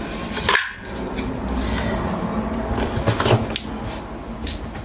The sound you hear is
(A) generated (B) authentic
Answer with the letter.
B